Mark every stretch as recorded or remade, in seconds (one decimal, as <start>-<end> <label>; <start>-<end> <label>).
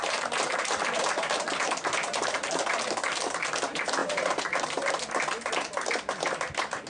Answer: 0.0-4.0 recorded; 4.0-4.9 remade; 4.9-6.9 recorded